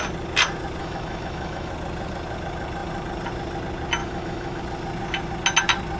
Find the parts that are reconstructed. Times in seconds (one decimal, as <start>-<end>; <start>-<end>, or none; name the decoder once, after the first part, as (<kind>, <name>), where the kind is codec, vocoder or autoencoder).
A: 0.8-1.7 (autoencoder, DAC-VAE); 4.0-4.6